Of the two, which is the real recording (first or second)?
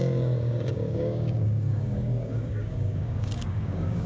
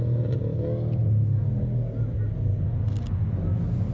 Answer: second